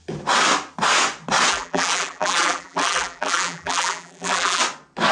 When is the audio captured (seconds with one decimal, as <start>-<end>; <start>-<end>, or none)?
0.0-1.5; 4.6-5.1